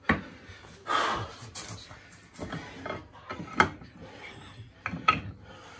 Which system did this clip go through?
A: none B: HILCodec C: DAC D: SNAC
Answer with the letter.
A